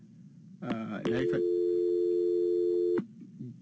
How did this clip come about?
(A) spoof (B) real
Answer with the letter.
B